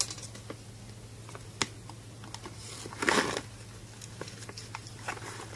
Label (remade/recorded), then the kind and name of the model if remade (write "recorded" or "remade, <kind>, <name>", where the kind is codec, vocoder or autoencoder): recorded